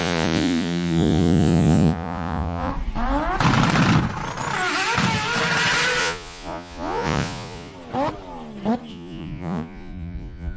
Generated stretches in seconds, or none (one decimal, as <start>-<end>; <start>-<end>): 0.0-2.7; 6.0-7.7; 8.9-10.6